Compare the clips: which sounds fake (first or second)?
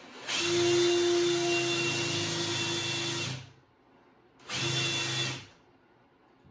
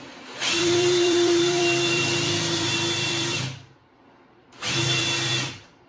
second